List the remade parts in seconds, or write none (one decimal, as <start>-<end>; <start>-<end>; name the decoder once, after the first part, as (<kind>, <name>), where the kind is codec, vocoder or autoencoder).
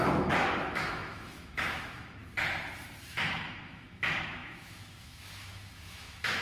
0.0-2.2 (autoencoder, DAC-VAE); 3.1-6.4